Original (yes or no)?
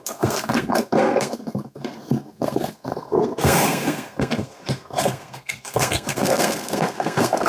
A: no